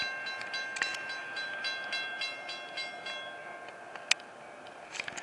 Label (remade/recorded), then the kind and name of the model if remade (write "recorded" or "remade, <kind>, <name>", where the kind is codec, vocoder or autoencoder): recorded